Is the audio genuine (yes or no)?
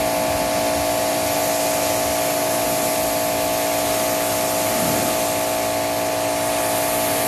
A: yes